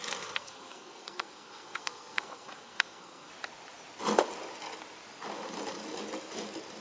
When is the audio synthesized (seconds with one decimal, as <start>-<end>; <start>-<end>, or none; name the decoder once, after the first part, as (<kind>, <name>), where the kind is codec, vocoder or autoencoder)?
0.0-3.3 (codec, SNAC)